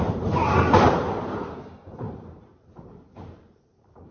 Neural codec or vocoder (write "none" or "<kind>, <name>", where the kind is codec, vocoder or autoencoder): vocoder, BigVGAN v2